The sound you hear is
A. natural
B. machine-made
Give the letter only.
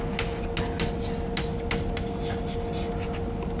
A